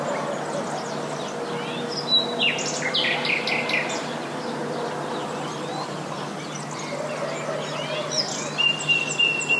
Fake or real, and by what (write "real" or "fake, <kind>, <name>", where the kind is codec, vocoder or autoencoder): real